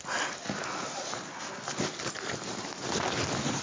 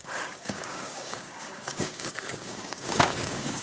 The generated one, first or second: second